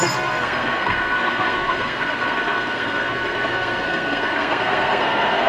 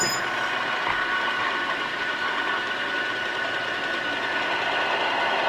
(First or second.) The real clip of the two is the second